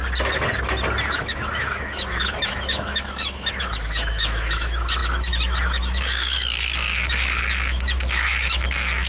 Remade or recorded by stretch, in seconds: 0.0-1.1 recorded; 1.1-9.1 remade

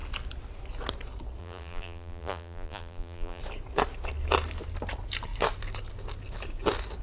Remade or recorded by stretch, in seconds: 0.0-1.4 recorded; 1.4-3.4 remade; 3.4-7.0 recorded

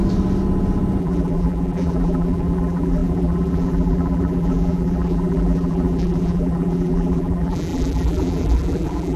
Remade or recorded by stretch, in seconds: 0.0-1.0 recorded; 1.0-9.2 remade

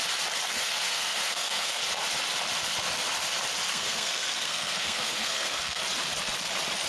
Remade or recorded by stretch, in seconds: 0.0-0.5 recorded; 0.5-1.8 remade; 1.8-3.7 recorded; 3.7-5.8 remade; 5.8-6.9 recorded

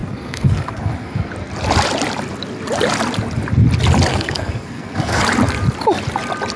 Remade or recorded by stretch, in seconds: 0.0-1.3 remade; 1.3-4.1 recorded; 4.1-5.2 remade; 5.2-6.6 recorded

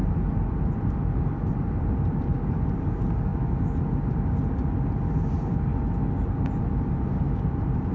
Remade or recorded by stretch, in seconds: 0.0-3.3 remade; 3.3-6.6 recorded; 6.6-7.9 remade